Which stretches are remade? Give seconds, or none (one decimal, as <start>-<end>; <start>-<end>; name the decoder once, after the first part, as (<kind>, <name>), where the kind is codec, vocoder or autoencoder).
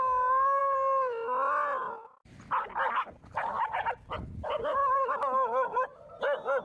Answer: none